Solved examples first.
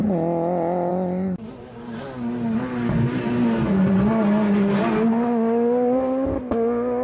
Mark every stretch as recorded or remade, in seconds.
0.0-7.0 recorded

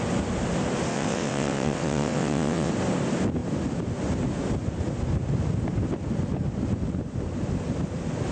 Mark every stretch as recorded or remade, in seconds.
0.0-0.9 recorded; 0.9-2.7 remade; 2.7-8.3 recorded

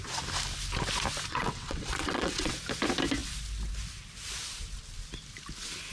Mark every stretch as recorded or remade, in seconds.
0.0-1.3 recorded; 1.3-2.5 remade; 2.5-5.9 recorded

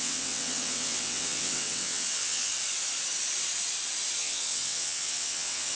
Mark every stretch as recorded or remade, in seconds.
0.0-2.5 remade; 2.5-4.2 recorded; 4.2-5.7 remade